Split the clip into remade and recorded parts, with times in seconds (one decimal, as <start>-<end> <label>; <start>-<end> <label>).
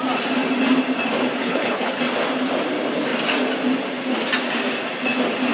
0.0-1.4 recorded; 1.4-2.0 remade; 2.0-5.5 recorded